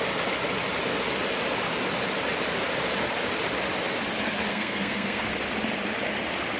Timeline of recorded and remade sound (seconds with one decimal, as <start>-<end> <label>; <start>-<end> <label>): 0.0-4.5 recorded; 4.5-5.3 remade; 5.3-6.6 recorded